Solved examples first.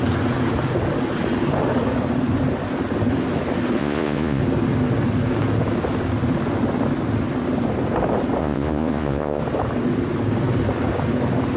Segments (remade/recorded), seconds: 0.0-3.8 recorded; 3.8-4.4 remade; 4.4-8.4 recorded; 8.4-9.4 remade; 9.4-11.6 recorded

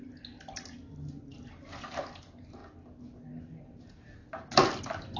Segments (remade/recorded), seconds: 0.0-5.2 recorded

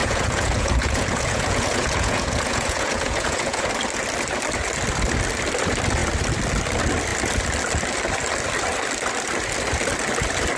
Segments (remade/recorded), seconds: 0.0-3.7 remade; 3.7-10.6 recorded

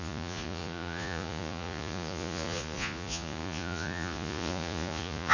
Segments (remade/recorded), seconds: 0.0-5.3 remade

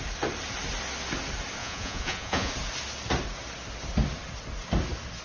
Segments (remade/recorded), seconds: 0.0-1.6 recorded; 1.6-2.5 remade; 2.5-5.2 recorded

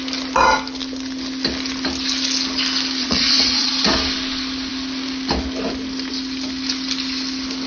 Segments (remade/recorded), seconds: 0.0-3.0 recorded; 3.0-3.7 remade; 3.7-7.7 recorded

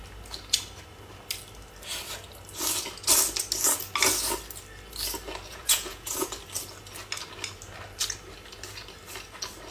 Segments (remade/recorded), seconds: 0.0-5.5 recorded; 5.5-6.3 remade; 6.3-9.7 recorded

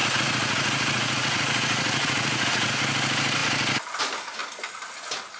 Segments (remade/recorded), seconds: 0.0-2.7 remade; 2.7-5.4 recorded